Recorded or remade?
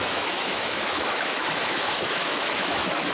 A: remade